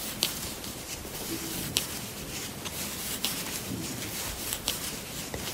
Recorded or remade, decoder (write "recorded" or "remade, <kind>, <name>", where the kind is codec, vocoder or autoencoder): recorded